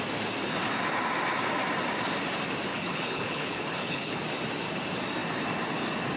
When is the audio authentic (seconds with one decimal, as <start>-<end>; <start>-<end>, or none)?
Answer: 0.0-2.7; 4.2-6.2

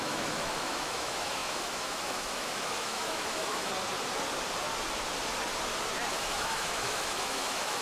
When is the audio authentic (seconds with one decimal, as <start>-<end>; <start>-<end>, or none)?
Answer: 3.7-6.1

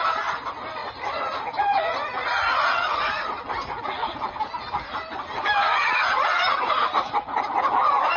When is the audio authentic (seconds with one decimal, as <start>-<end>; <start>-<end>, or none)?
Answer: 0.0-0.8; 4.4-5.6; 7.5-8.2

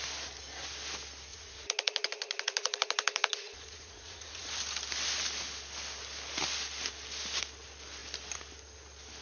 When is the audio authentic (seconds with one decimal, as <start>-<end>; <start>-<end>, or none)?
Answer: 0.0-1.3; 4.6-9.2

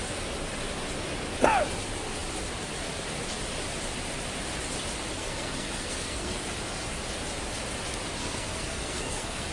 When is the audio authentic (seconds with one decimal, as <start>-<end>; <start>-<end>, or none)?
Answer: 0.0-5.1; 6.4-8.2

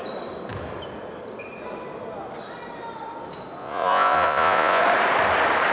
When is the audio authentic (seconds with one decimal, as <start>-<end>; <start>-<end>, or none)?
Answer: 0.0-3.6; 4.8-5.7

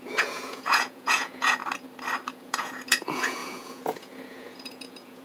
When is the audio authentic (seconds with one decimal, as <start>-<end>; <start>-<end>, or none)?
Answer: 1.6-2.3

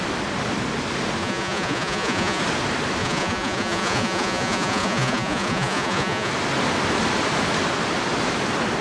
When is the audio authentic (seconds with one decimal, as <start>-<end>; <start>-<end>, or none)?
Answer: 0.0-1.2; 2.4-3.0; 6.3-8.8